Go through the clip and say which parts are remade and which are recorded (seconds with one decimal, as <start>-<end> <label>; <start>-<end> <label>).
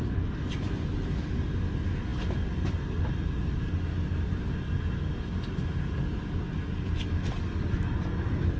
0.0-8.6 recorded